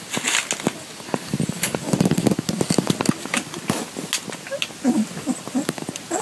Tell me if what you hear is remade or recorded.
recorded